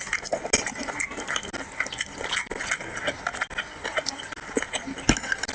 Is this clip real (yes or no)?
yes